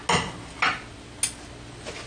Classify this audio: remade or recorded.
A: recorded